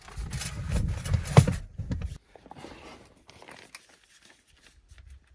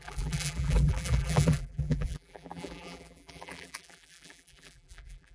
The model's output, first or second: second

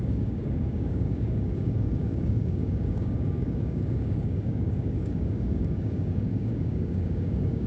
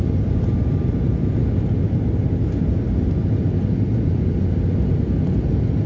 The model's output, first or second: first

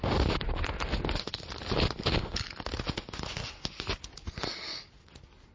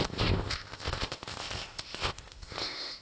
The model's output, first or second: second